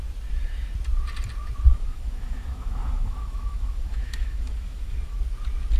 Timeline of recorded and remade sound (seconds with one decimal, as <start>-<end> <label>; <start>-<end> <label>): 0.0-1.7 recorded; 1.7-5.2 remade; 5.2-5.8 recorded